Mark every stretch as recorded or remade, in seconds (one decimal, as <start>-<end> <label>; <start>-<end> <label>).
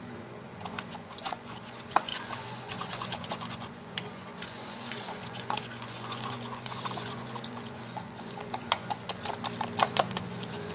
0.0-9.3 remade; 9.3-9.8 recorded; 9.8-10.7 remade